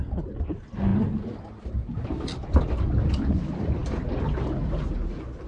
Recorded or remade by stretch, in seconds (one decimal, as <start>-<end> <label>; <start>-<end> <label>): 0.0-5.5 recorded